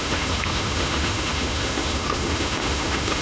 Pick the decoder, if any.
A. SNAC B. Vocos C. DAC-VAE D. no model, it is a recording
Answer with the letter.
C